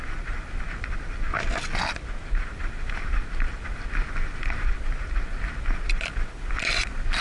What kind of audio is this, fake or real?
real